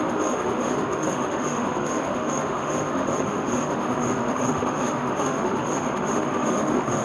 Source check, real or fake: fake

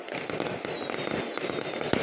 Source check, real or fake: real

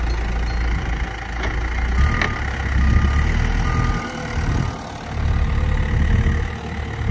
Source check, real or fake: real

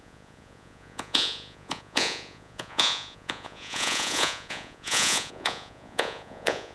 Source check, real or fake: fake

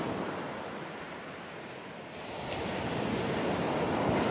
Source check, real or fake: real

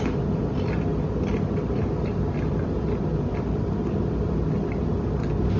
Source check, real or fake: real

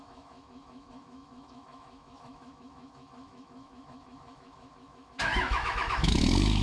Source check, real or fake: fake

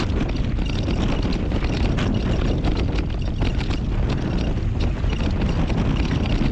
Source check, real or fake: real